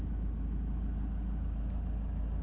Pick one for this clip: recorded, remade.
recorded